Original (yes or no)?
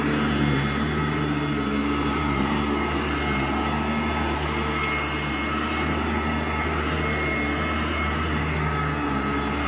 yes